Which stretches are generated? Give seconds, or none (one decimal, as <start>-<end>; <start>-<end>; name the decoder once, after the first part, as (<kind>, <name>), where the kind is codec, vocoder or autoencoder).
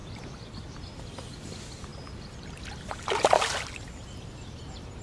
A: none